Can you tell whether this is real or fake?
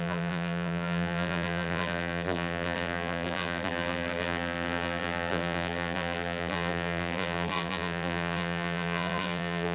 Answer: fake